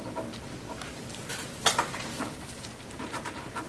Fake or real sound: real